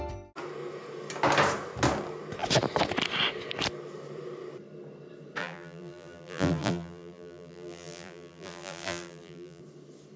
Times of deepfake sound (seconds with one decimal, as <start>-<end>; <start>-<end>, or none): 5.4-9.6

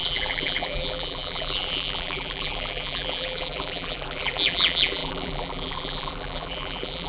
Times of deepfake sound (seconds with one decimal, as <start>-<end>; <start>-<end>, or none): 0.0-7.1

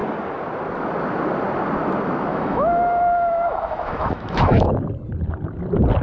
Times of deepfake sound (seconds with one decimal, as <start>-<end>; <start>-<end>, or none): 2.3-4.7

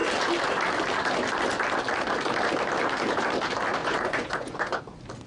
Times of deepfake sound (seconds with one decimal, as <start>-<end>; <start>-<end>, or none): 3.8-4.8

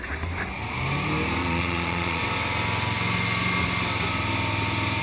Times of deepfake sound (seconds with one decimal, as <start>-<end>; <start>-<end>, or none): 1.4-2.2

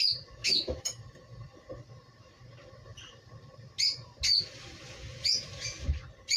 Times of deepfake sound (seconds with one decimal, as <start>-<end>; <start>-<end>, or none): 0.4-1.0

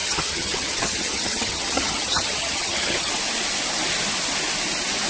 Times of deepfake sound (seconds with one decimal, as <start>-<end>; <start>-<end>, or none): 0.0-3.1